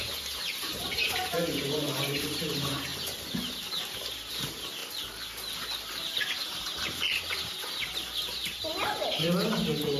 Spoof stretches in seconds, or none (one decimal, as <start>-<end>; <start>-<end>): 0.0-2.9; 3.8-4.8; 5.8-10.0